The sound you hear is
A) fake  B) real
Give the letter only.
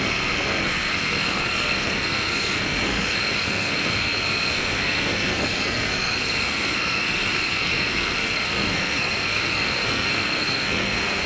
A